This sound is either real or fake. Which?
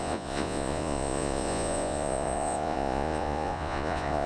fake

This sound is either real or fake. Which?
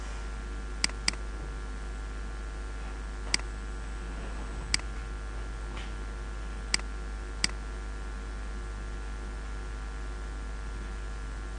real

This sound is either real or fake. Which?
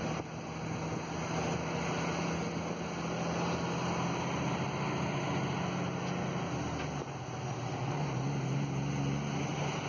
real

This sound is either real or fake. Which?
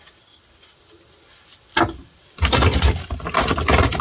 real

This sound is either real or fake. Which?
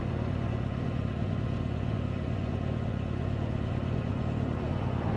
fake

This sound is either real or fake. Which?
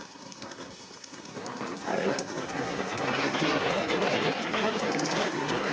fake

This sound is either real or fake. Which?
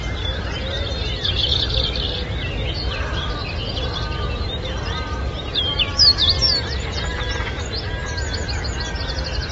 real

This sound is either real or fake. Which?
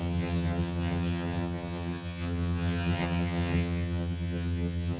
fake